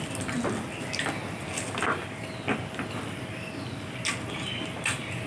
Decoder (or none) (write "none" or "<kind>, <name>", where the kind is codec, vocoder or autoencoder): none